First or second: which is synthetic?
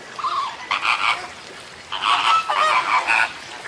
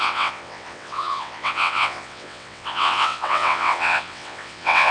second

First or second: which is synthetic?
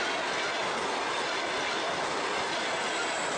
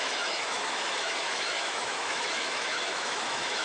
second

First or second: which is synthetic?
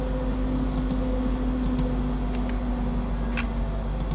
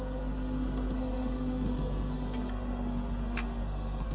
second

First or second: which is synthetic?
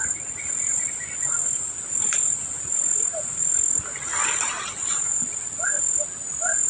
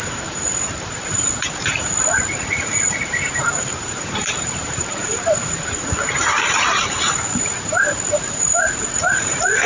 second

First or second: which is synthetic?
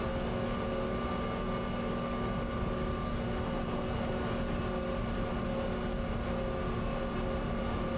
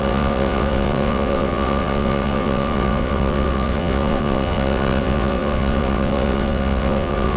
second